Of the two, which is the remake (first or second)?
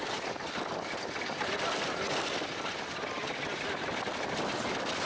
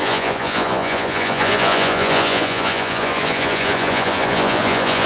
second